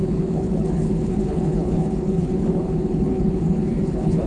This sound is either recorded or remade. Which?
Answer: remade